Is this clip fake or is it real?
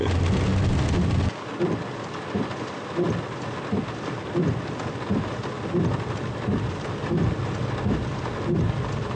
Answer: real